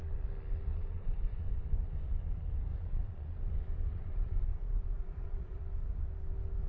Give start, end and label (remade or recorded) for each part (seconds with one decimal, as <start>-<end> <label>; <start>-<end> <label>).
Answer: 0.0-0.7 recorded; 0.7-1.5 remade; 1.5-2.7 recorded; 2.7-3.5 remade; 3.5-3.9 recorded; 3.9-5.6 remade; 5.6-6.7 recorded